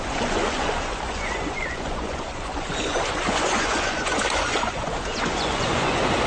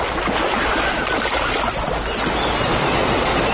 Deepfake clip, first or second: first